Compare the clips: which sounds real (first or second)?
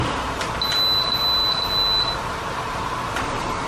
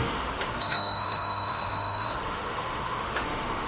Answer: first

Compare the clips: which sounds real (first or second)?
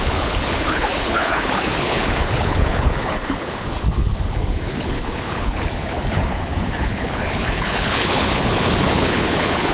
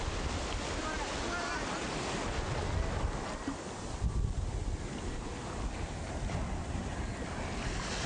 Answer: second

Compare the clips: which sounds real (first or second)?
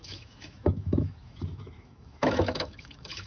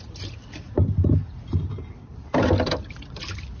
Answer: second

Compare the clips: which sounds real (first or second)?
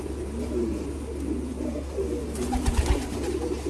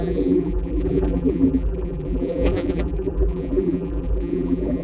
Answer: first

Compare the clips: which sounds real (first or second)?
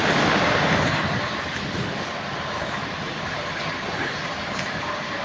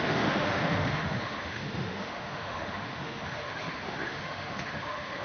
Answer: first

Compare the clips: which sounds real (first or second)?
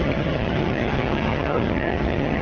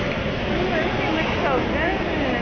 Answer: second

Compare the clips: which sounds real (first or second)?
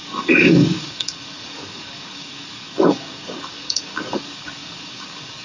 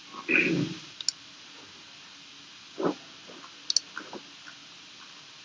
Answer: second